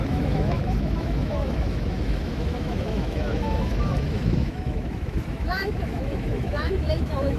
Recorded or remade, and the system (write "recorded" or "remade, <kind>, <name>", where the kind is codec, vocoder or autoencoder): remade, autoencoder, DAC-VAE